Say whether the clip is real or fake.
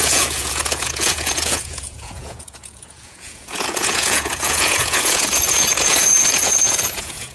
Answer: fake